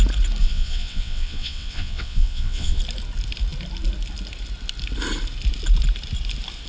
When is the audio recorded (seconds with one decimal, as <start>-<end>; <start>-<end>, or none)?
0.0-0.4; 2.8-6.7